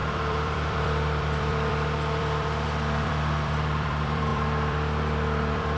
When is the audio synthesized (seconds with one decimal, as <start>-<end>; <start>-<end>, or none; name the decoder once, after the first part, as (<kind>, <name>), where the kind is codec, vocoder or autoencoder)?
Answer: 0.0-5.8 (vocoder, BigVGAN v2)